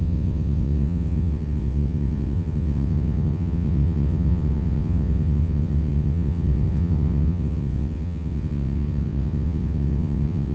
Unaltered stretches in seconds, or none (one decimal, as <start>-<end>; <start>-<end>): none